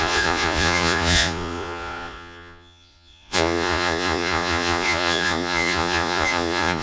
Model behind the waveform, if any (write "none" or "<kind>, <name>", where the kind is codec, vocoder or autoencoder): vocoder, Vocos